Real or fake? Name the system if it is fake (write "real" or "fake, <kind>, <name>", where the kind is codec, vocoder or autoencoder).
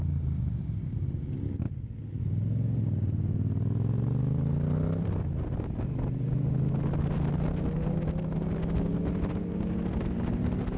real